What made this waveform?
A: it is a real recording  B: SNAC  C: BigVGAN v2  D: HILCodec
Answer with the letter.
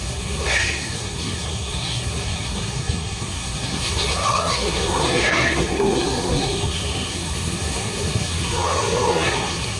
B